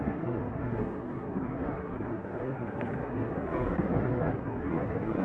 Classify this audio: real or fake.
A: fake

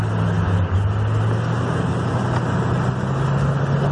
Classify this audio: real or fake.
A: real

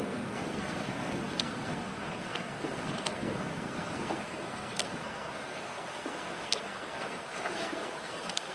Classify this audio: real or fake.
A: fake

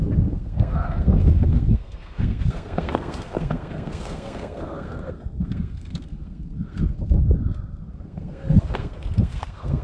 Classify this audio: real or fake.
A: fake